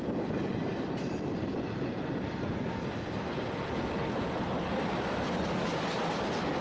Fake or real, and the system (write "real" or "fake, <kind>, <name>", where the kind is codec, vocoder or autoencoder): real